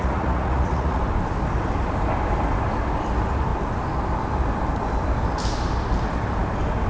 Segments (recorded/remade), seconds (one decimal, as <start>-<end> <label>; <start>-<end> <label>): 0.0-1.0 remade; 1.0-6.9 recorded